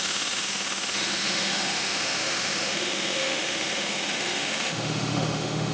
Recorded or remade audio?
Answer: remade